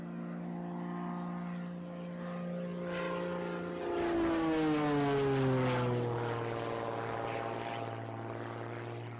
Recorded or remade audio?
recorded